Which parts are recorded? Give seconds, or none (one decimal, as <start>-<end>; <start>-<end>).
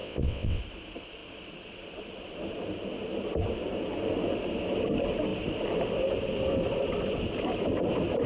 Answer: 0.6-8.3